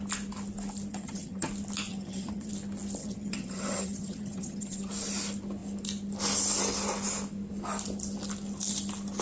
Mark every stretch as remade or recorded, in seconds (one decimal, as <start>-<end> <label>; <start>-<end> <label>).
0.0-0.9 recorded; 0.9-1.5 remade; 1.5-1.9 recorded; 1.9-2.5 remade; 2.5-3.0 recorded; 3.0-4.9 remade; 4.9-9.2 recorded

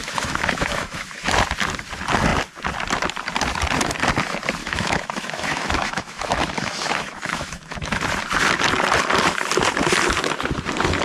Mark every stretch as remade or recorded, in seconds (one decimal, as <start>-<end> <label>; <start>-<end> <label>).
0.0-1.3 remade; 1.3-4.6 recorded; 4.6-8.0 remade; 8.0-11.0 recorded

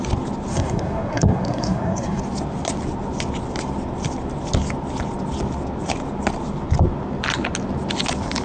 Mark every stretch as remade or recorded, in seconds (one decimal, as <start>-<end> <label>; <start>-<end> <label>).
0.0-0.5 recorded; 0.5-2.2 remade; 2.2-8.4 recorded

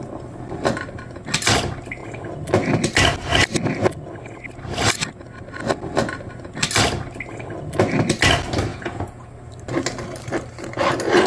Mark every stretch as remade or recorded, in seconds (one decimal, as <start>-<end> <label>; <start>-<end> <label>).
0.0-8.7 recorded; 8.7-9.3 remade; 9.3-11.3 recorded